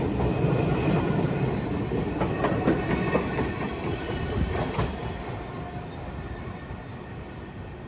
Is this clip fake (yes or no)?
no